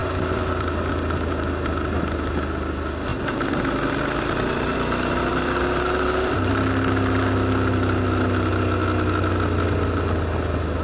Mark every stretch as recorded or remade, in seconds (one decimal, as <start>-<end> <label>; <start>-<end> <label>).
0.0-0.9 remade; 0.9-3.1 recorded; 3.1-6.5 remade; 6.5-10.8 recorded